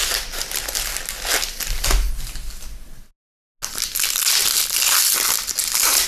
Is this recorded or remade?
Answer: recorded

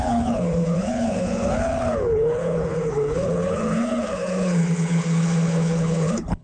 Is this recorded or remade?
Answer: remade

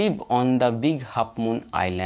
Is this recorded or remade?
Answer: remade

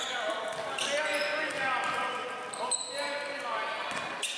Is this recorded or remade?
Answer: recorded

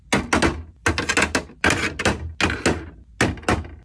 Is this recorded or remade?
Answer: recorded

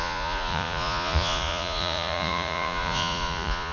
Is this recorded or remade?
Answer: remade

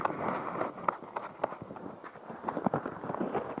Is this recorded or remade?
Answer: recorded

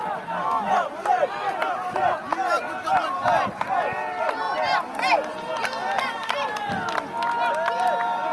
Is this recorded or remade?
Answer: recorded